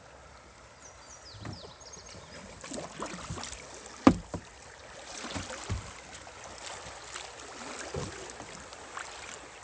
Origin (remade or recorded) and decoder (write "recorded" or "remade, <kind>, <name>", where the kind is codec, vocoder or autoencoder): recorded